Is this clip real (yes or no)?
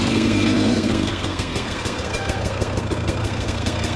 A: no